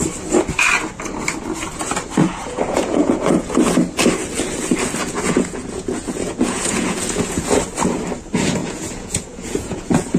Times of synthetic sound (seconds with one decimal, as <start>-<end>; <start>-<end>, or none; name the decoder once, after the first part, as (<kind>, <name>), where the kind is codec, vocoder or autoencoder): 2.2-3.5 (vocoder, Vocos); 5.0-7.6; 8.6-10.2